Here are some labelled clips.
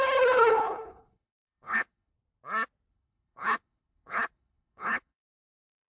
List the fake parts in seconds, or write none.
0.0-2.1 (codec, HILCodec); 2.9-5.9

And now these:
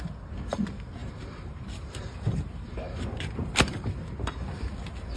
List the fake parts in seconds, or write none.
1.0-4.1 (vocoder, BigVGAN v2)